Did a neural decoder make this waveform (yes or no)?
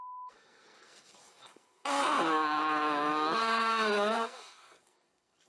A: yes